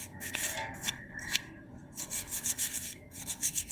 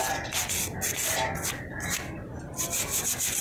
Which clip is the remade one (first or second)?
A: first